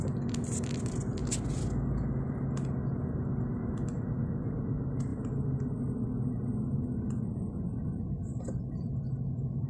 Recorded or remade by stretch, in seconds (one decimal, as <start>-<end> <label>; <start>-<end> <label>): 0.0-9.7 recorded

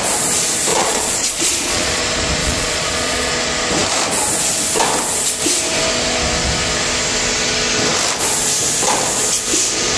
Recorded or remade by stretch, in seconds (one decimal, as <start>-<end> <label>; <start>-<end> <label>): 0.0-0.7 recorded; 0.7-2.0 remade; 2.0-2.4 recorded; 2.4-3.3 remade; 3.3-10.0 recorded